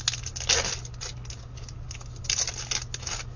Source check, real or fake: real